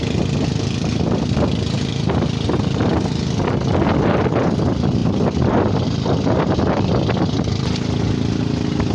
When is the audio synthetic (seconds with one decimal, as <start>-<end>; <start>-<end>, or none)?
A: 5.0-7.2